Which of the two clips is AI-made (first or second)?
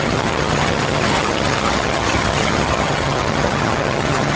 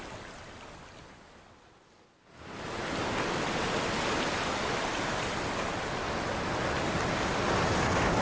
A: first